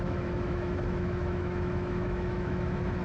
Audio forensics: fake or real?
fake